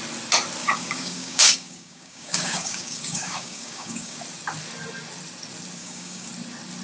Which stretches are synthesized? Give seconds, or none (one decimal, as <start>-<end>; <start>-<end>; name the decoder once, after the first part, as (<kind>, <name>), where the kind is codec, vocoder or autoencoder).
0.6-4.2 (codec, DAC); 5.8-6.3